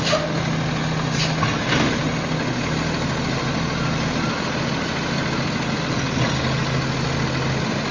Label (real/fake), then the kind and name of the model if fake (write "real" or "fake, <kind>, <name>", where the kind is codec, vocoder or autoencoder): real